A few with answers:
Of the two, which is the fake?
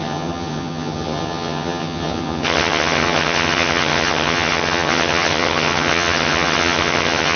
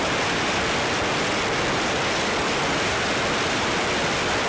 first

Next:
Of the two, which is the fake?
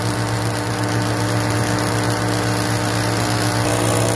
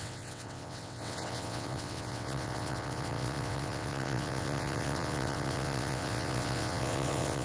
second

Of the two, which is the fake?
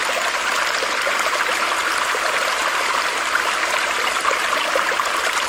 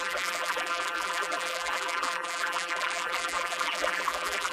second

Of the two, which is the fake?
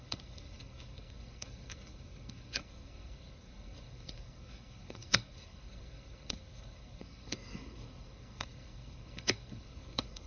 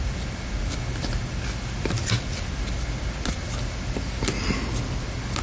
first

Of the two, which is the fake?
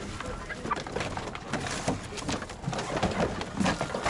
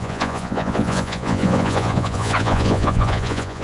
second